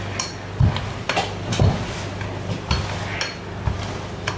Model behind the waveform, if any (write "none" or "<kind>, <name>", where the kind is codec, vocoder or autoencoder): none